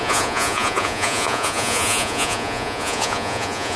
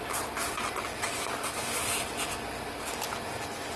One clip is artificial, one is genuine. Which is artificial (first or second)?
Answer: first